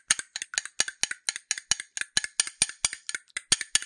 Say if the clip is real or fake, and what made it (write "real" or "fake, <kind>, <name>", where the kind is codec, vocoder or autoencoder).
real